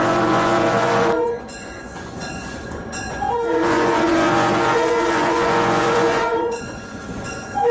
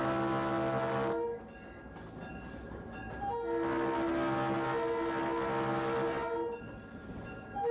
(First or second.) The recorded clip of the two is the second